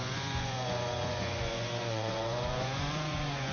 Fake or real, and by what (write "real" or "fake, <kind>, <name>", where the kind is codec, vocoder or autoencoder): fake, vocoder, Vocos